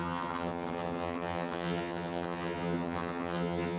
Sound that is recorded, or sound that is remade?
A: remade